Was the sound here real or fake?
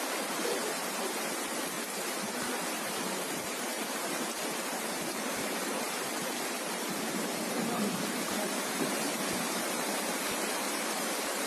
fake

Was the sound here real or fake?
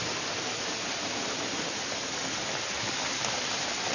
real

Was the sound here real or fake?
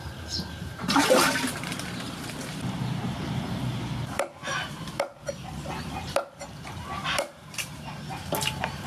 fake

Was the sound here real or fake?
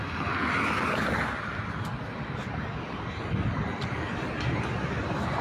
real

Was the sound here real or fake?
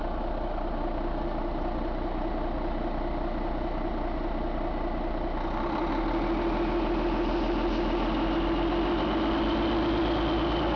real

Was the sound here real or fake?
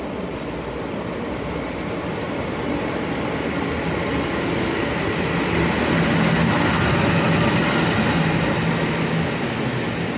real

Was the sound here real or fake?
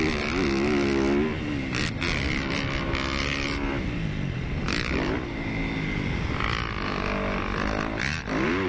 real